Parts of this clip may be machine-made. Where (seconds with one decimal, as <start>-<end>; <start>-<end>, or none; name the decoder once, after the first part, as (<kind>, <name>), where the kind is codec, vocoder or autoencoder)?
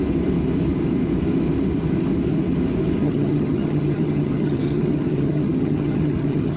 3.0-6.6 (vocoder, HiFi-GAN)